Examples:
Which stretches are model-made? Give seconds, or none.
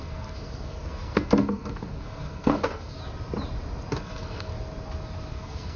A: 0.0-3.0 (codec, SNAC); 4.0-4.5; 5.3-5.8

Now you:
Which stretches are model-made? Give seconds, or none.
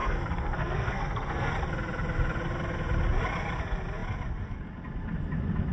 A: 0.0-1.5 (codec, SNAC)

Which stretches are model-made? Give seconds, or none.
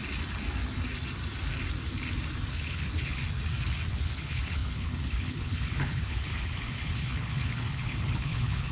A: 2.5-3.2 (codec, HILCodec); 3.9-8.7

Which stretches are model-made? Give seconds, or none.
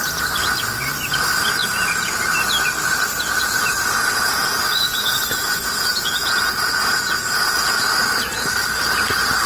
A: 1.6-2.2 (vocoder, Vocos); 3.4-7.9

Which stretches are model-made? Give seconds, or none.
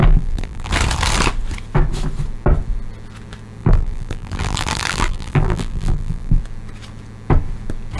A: 0.0-0.7 (vocoder, BigVGAN v2); 3.6-6.4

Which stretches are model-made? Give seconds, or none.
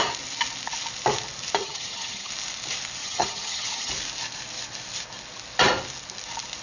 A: 1.6-2.3 (vocoder, HiFi-GAN); 3.0-3.9